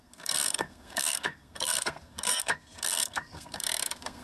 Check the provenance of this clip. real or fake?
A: fake